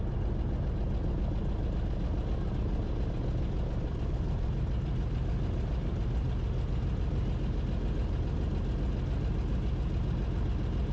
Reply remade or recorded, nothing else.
recorded